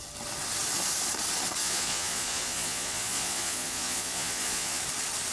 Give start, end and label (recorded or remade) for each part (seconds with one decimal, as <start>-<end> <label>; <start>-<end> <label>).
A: 0.0-1.6 recorded; 1.6-4.8 remade; 4.8-5.3 recorded